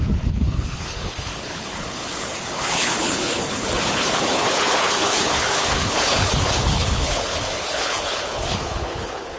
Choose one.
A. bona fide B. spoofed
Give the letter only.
B